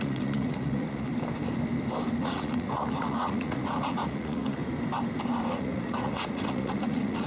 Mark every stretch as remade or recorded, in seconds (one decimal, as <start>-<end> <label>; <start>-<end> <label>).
0.0-1.1 remade; 1.1-2.2 recorded; 2.2-4.6 remade; 4.6-5.5 recorded; 5.5-7.3 remade